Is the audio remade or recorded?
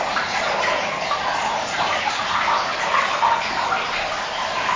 recorded